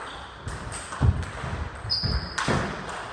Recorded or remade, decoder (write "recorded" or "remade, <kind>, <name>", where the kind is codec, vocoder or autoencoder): recorded